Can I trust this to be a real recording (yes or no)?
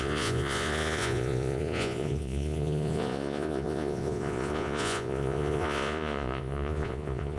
no